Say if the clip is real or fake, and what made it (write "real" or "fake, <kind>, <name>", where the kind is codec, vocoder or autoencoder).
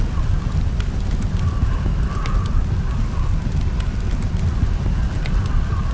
real